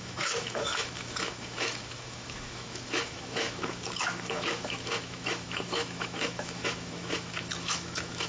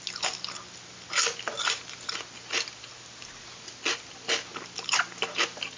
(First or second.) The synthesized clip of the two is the first